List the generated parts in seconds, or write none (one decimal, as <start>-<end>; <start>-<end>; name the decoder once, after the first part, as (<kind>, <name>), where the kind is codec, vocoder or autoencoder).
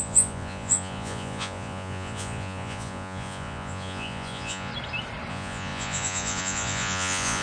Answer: 0.0-4.7 (vocoder, Vocos); 5.3-7.4